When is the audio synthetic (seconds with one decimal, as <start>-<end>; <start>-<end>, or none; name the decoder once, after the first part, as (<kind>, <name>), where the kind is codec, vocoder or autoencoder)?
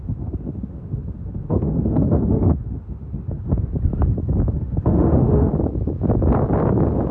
0.0-3.7 (autoencoder, DAC-VAE); 4.5-5.5